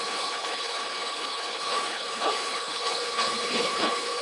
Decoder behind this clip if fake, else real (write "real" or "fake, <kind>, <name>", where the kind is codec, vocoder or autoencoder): fake, codec, HILCodec